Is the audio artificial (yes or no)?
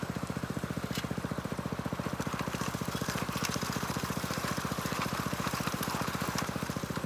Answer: yes